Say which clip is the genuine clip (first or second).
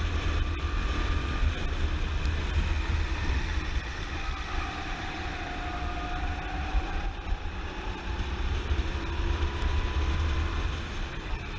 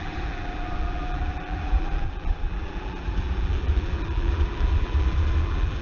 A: first